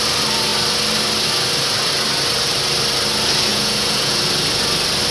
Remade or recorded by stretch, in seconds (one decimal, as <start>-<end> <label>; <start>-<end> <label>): 0.0-3.5 recorded; 3.5-4.2 remade; 4.2-5.1 recorded